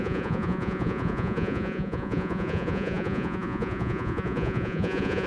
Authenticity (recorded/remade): remade